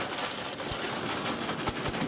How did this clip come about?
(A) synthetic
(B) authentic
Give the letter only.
B